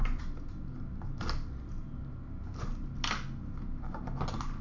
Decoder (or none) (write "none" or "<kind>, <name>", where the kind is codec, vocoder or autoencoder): none